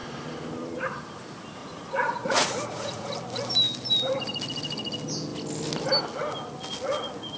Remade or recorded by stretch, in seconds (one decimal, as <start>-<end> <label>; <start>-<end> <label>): 0.0-1.6 recorded; 1.6-3.1 remade; 3.1-7.4 recorded